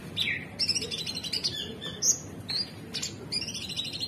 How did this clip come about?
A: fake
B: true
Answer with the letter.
B